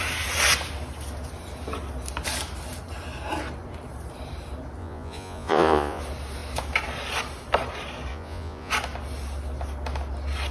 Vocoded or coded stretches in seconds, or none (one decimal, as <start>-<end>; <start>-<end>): 4.8-6.0; 8.1-8.7